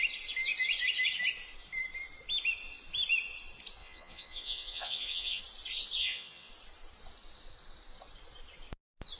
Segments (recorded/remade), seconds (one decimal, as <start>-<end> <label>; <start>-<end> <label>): 0.0-3.8 recorded; 3.8-5.4 remade; 5.4-6.0 recorded; 6.0-6.5 remade; 6.5-9.2 recorded